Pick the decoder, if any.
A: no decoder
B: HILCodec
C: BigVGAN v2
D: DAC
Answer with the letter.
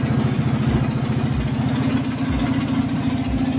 A